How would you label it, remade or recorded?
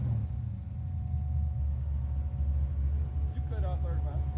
recorded